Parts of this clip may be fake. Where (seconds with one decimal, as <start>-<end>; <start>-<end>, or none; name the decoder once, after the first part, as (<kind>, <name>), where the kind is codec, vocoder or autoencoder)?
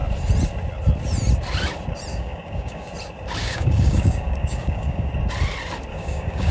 2.1-2.9 (codec, DAC); 3.4-5.1; 5.9-6.5